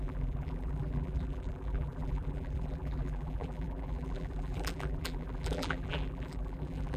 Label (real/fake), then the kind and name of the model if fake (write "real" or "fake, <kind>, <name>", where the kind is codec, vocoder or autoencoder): fake, vocoder, BigVGAN v2